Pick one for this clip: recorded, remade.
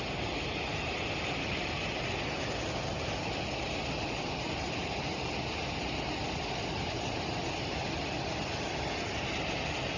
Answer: recorded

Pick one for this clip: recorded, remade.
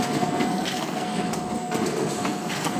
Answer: remade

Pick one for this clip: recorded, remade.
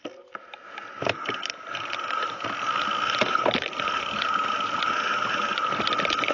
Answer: recorded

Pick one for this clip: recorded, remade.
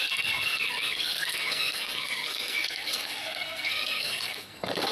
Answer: remade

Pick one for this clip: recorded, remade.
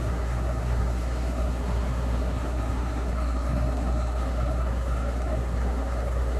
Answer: remade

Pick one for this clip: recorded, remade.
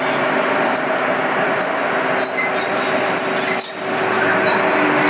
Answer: recorded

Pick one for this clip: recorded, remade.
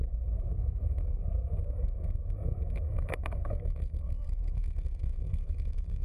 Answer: remade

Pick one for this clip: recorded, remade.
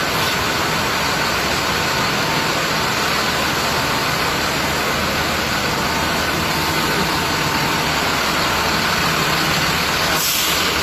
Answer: recorded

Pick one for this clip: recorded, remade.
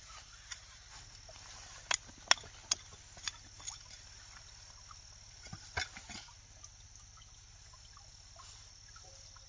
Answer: recorded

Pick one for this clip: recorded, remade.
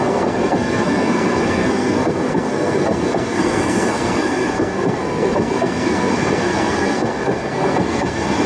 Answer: remade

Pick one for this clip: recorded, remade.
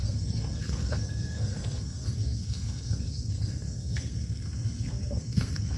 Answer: remade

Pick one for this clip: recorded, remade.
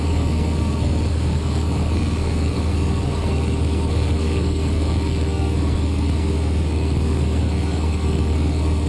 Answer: remade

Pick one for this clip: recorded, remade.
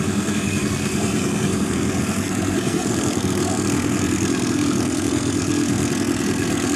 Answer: remade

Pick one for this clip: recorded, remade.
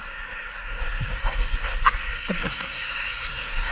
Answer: remade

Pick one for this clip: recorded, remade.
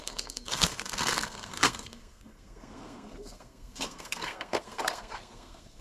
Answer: remade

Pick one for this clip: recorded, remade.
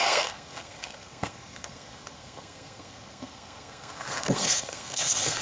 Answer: remade